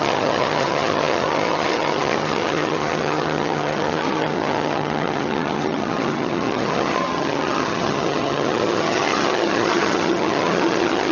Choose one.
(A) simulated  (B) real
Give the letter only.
A